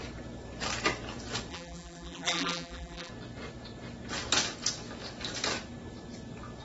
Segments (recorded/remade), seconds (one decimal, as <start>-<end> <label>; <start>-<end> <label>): 0.0-1.5 recorded; 1.5-3.1 remade; 3.1-6.6 recorded